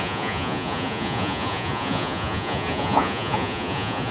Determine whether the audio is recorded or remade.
remade